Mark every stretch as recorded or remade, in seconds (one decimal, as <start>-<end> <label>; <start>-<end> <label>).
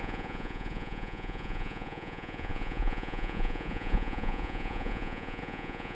0.0-5.9 remade